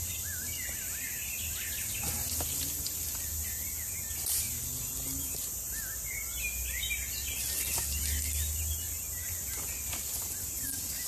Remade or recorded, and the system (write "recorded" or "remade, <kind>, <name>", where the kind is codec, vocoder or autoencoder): recorded